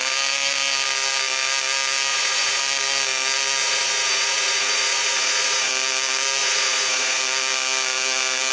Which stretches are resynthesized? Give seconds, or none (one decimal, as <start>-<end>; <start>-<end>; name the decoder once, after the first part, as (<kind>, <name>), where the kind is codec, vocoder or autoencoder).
2.1-2.6 (vocoder, Vocos); 3.6-5.7; 6.4-7.2